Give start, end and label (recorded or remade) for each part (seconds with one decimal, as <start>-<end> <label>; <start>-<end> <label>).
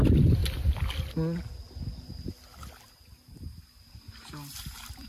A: 0.0-5.1 recorded